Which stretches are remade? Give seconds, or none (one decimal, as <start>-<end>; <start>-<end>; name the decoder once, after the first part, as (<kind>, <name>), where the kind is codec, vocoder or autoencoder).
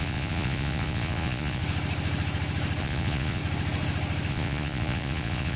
0.0-1.6 (vocoder, Vocos); 2.8-3.4; 4.3-5.6